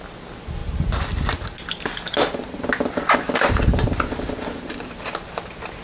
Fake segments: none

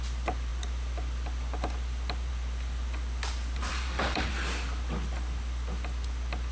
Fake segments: 3.6-4.3